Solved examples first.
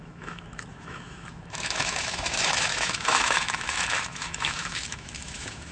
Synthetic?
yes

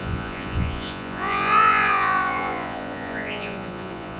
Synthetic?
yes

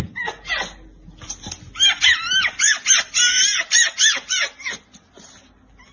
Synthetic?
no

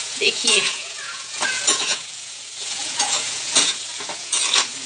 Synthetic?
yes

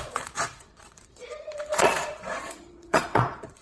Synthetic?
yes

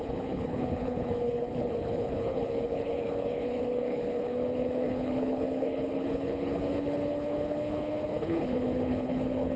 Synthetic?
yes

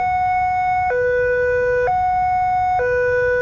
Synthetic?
no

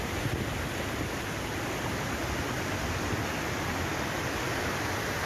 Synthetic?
no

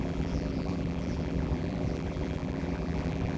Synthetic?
yes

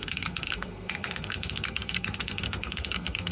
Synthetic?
yes